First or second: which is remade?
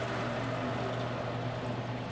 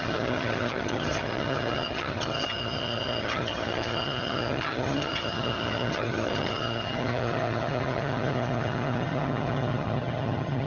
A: second